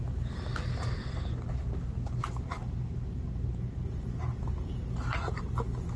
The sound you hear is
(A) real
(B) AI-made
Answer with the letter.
A